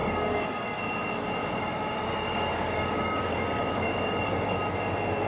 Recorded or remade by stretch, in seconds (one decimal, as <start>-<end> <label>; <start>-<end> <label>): 0.0-0.8 remade; 0.8-1.4 recorded; 1.4-4.6 remade; 4.6-5.3 recorded